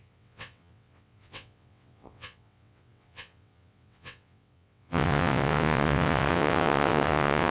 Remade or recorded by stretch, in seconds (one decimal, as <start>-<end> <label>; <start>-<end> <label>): 0.0-7.5 remade